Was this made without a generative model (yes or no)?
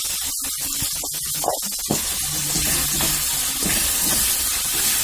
yes